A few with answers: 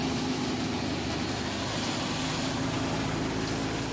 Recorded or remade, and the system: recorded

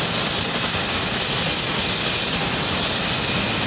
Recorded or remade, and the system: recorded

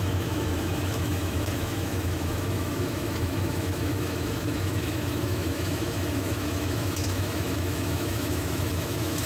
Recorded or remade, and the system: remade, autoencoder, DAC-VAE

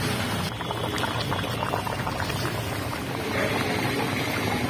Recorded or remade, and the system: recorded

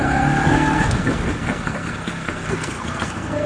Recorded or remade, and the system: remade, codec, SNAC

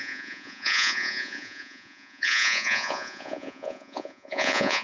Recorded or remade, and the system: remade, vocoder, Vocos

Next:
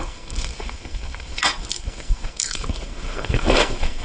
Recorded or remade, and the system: remade, codec, SNAC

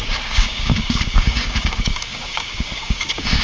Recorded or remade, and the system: remade, codec, DAC